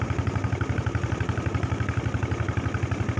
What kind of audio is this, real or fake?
real